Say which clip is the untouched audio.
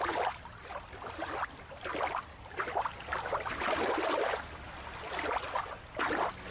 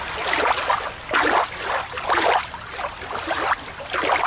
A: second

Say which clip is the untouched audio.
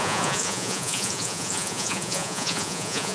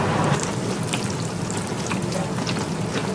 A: second